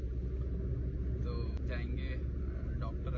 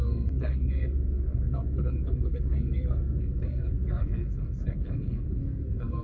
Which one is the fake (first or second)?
second